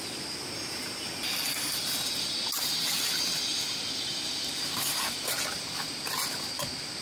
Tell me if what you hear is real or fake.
real